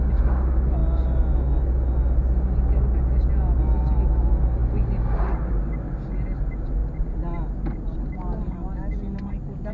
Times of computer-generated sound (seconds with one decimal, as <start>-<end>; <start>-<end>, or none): none